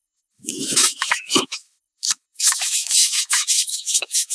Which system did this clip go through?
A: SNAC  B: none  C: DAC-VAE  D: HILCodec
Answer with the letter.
C